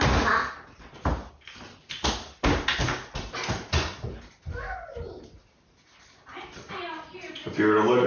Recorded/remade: recorded